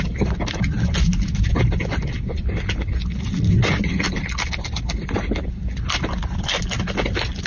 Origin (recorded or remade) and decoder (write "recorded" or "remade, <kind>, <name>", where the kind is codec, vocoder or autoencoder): recorded